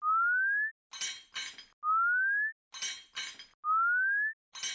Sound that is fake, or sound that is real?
real